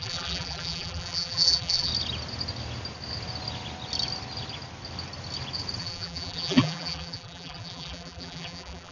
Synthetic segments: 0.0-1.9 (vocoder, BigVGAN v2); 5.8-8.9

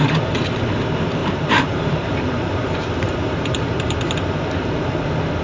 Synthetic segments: 1.2-4.4 (vocoder, BigVGAN v2)

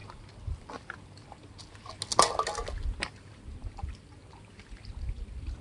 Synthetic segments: none

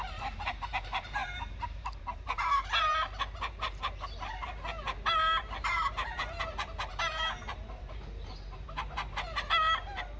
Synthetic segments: 0.0-10.2 (vocoder, BigVGAN v2)

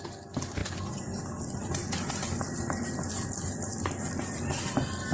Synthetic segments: none

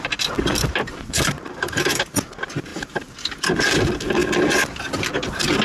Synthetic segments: 0.5-2.1 (vocoder, BigVGAN v2)